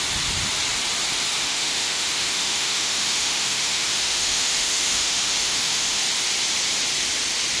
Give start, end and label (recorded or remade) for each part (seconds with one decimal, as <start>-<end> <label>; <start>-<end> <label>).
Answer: 0.0-1.4 recorded; 1.4-6.0 remade; 6.0-7.6 recorded